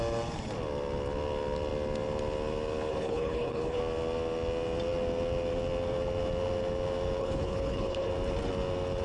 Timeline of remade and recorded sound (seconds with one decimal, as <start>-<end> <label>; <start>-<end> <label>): 0.0-2.9 recorded; 2.9-3.8 remade; 3.8-7.2 recorded; 7.2-8.1 remade; 8.1-9.0 recorded